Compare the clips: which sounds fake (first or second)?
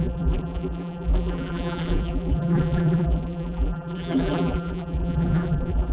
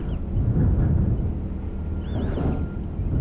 first